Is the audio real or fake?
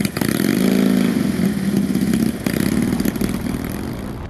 real